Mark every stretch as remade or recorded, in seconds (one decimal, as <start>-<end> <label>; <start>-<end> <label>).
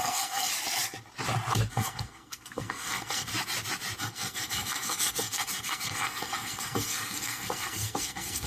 0.0-0.5 remade; 0.5-1.7 recorded; 1.7-3.3 remade; 3.3-4.0 recorded; 4.0-8.5 remade